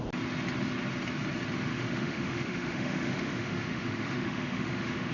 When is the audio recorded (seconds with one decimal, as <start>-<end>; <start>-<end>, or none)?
0.0-1.7